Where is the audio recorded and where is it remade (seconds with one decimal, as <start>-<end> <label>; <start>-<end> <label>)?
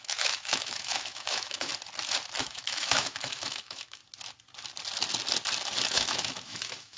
0.0-1.7 remade; 1.7-2.4 recorded; 2.4-4.0 remade; 4.0-5.9 recorded; 5.9-7.0 remade